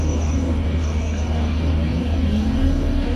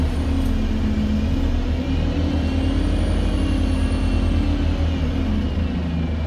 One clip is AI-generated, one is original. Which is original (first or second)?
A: second